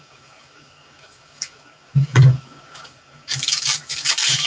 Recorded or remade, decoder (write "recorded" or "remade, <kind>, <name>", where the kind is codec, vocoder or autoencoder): remade, codec, DAC